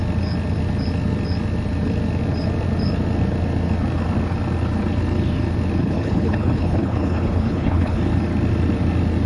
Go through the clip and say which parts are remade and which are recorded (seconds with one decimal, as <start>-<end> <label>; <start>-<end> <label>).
0.0-5.8 recorded; 5.8-8.0 remade; 8.0-9.3 recorded